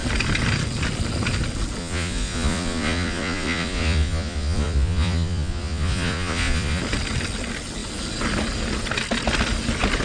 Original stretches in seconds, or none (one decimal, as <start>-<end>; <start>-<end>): 0.0-1.8; 6.8-10.0